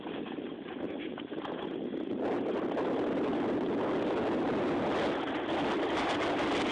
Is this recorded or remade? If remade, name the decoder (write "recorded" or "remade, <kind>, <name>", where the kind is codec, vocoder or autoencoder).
recorded